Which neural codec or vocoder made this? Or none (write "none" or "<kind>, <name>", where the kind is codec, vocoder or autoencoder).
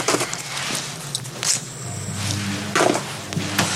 none